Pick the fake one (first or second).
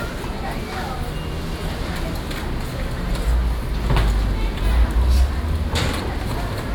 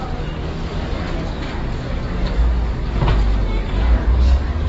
second